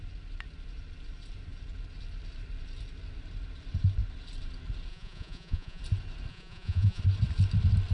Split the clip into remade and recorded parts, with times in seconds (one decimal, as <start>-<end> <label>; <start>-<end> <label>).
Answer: 0.0-4.9 recorded; 4.9-5.8 remade; 5.8-6.3 recorded; 6.3-7.0 remade; 7.0-7.9 recorded